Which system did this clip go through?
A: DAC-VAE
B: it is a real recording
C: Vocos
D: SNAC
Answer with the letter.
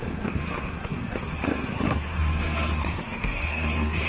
D